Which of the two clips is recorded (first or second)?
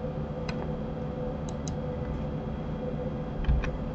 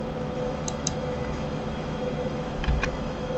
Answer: first